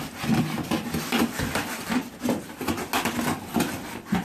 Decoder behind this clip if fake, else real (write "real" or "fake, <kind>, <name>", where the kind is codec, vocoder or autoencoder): real